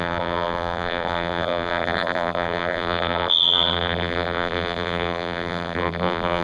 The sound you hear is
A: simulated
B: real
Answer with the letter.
A